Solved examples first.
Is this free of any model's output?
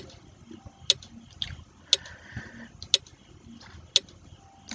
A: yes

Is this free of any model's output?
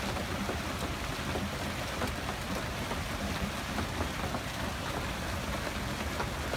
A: yes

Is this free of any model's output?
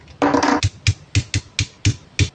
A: yes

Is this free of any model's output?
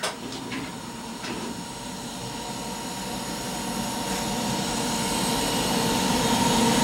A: yes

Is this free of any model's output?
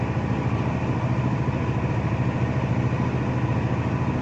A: yes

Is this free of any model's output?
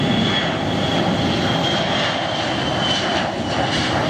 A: yes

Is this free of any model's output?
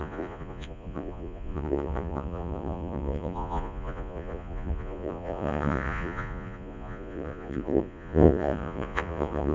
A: no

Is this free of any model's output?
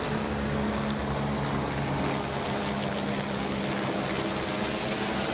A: yes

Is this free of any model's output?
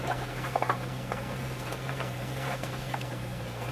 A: no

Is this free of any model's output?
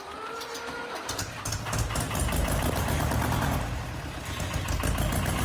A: yes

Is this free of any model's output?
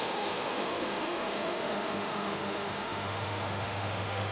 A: no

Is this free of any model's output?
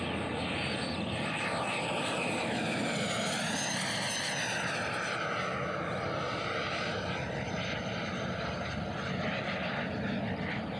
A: yes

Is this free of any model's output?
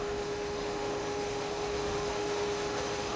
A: no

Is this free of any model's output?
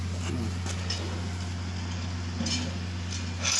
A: yes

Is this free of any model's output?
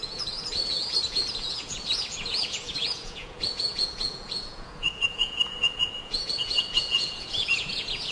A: no